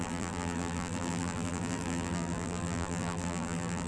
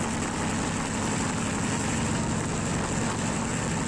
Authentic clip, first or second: second